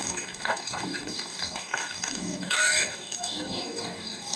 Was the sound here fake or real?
fake